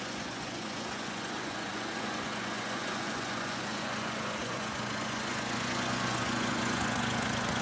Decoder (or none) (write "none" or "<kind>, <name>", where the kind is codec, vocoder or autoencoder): vocoder, Vocos